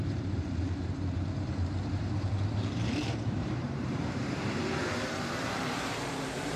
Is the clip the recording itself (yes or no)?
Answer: no